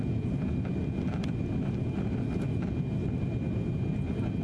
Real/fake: real